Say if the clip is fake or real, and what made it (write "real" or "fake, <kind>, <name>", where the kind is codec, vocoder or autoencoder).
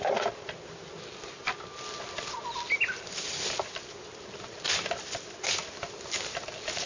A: real